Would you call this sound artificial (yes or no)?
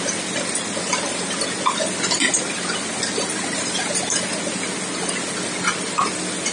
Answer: no